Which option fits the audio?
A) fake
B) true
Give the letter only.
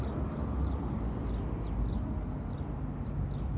B